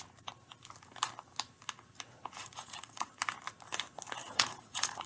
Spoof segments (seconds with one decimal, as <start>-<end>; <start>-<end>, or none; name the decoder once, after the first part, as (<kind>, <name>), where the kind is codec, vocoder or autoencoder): 2.4-3.1 (vocoder, Vocos); 4.2-5.1